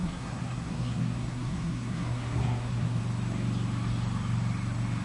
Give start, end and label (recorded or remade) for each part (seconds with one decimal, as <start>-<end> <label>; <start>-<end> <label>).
0.0-3.0 remade; 3.0-5.0 recorded